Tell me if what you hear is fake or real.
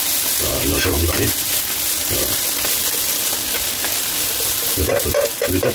real